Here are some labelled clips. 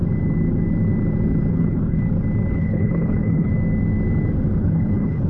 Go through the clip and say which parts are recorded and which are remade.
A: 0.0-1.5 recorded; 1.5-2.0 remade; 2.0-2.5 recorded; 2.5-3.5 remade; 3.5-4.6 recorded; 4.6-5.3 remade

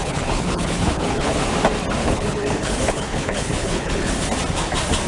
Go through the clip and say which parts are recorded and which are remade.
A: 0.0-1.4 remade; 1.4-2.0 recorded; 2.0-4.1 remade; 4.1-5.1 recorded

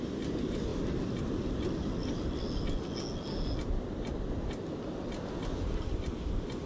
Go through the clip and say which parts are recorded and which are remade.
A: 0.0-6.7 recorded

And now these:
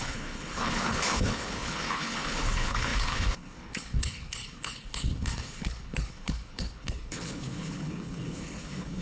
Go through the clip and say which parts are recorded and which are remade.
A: 0.0-9.0 remade

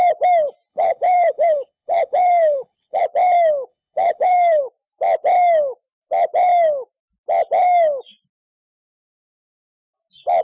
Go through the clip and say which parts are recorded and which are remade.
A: 0.0-0.7 recorded; 0.7-3.0 remade; 3.0-3.7 recorded; 3.7-4.6 remade; 4.6-10.4 recorded

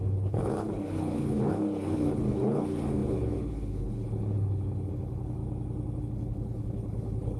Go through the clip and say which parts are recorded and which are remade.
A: 0.0-5.4 remade; 5.4-6.0 recorded; 6.0-7.4 remade